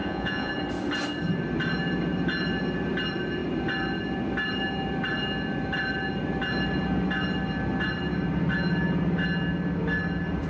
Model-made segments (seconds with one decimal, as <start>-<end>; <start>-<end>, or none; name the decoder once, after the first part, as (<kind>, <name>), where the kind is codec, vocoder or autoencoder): 0.0-0.5 (vocoder, Vocos)